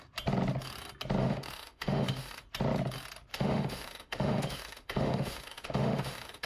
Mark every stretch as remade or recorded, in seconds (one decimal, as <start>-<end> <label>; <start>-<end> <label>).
0.0-1.2 recorded; 1.2-2.4 remade; 2.4-3.3 recorded; 3.3-6.5 remade